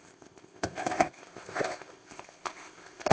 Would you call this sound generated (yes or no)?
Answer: yes